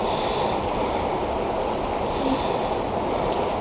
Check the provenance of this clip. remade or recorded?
recorded